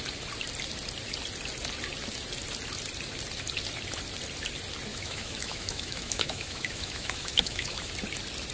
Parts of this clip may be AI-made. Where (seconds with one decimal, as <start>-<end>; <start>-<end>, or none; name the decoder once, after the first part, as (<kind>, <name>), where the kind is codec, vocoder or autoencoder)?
4.9-7.9 (autoencoder, DAC-VAE)